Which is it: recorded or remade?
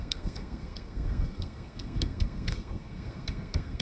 remade